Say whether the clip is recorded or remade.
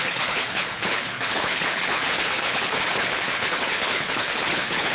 remade